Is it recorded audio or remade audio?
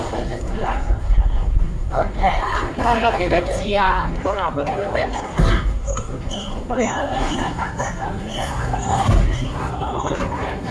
remade